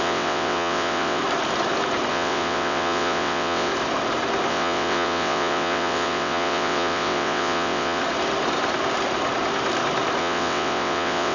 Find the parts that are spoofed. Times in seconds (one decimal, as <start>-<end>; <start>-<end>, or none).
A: 0.0-1.2; 2.1-3.7; 4.5-8.0; 10.2-11.3